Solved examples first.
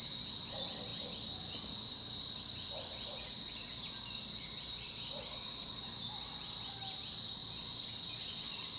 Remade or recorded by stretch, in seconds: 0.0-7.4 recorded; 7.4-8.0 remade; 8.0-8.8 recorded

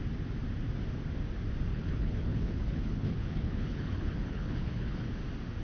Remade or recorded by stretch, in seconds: 0.0-1.7 recorded; 1.7-5.1 remade; 5.1-5.6 recorded